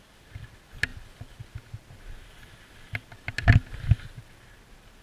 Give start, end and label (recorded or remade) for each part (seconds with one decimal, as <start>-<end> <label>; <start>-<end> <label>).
0.0-5.0 recorded